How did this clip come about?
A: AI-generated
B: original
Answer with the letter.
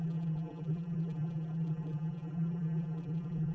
A